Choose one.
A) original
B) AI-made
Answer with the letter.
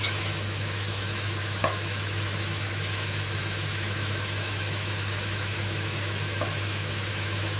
B